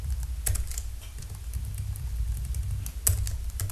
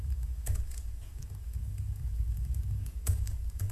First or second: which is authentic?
first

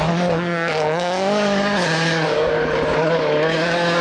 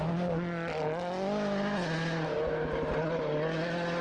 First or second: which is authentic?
second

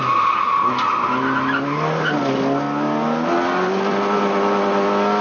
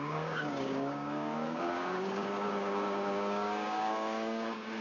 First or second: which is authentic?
first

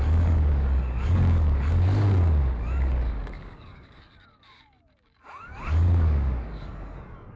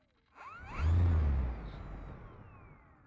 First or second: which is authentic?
second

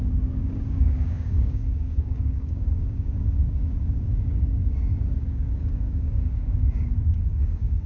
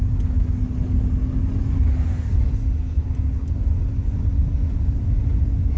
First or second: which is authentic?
second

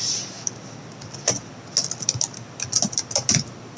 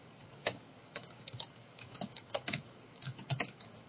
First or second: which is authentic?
first